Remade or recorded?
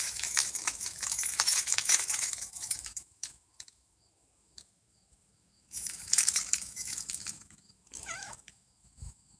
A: remade